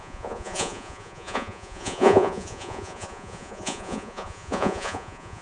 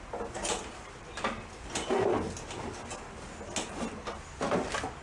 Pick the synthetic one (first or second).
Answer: first